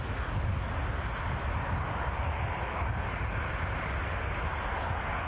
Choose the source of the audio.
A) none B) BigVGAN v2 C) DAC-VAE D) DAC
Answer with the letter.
A